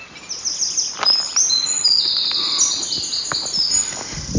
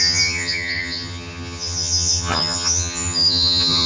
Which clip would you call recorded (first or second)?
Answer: first